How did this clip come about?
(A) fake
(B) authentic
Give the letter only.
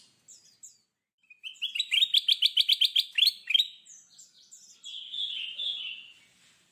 B